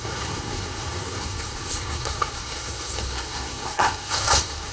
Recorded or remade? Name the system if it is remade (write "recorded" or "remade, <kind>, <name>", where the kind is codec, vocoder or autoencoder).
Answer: remade, codec, SNAC